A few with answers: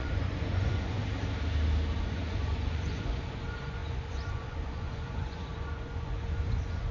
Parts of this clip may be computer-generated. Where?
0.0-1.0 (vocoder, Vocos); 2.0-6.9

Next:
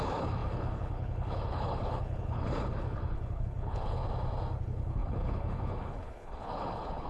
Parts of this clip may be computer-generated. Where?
0.0-4.0 (codec, HILCodec); 4.6-7.1

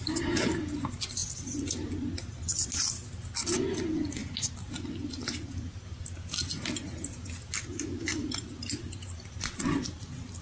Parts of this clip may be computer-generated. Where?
none

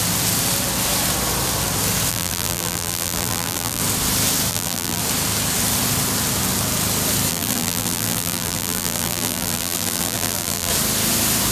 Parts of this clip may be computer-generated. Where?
2.1-3.8 (vocoder, BigVGAN v2); 4.5-5.0; 7.3-10.7